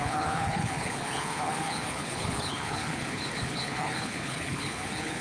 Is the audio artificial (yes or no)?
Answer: yes